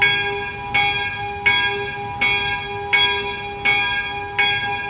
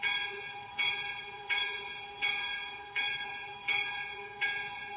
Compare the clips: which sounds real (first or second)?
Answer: first